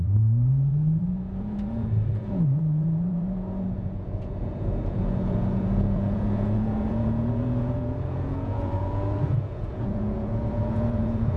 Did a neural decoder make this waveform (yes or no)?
yes